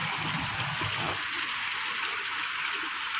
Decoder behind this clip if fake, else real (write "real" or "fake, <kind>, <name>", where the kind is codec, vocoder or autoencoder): real